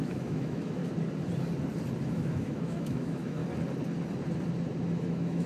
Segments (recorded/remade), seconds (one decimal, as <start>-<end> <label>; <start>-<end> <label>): 0.0-0.8 remade; 0.8-2.1 recorded; 2.1-3.4 remade; 3.4-5.0 recorded; 5.0-5.5 remade

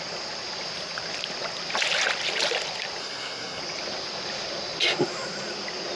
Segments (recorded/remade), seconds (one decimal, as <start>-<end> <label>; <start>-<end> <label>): 0.0-3.0 recorded; 3.0-3.6 remade; 3.6-6.0 recorded

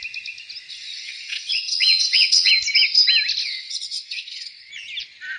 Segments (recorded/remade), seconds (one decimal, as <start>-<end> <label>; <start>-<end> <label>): 0.0-0.7 recorded; 0.7-2.5 remade; 2.5-3.4 recorded; 3.4-4.7 remade; 4.7-5.4 recorded

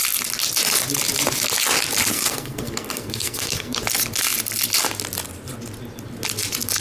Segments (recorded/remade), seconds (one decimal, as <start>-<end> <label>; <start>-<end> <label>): 0.0-2.1 recorded; 2.1-3.8 remade; 3.8-6.8 recorded

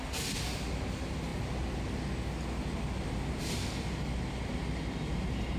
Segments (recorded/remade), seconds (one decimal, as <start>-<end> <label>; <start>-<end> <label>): 0.0-5.6 recorded